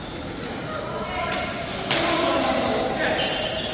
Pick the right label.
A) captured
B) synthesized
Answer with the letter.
A